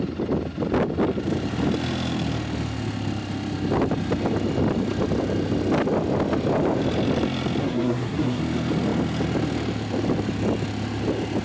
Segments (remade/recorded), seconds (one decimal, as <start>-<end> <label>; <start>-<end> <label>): 0.0-7.6 recorded; 7.6-8.4 remade; 8.4-11.4 recorded